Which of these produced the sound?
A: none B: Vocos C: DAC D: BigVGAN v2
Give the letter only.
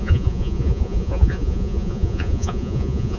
B